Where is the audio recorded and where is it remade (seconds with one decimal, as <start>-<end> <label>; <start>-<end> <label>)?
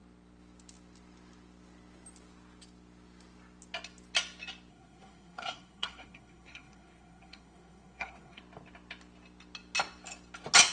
0.0-4.7 recorded; 4.7-8.4 remade; 8.4-10.7 recorded